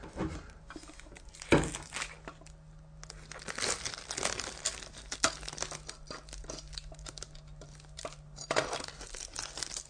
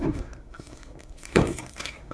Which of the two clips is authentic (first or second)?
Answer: first